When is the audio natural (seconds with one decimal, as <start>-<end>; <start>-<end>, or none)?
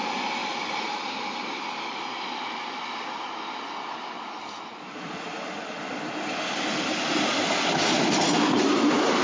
0.0-0.4; 3.9-9.2